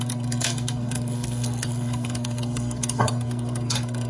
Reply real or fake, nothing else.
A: fake